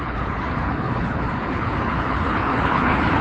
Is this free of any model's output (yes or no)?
no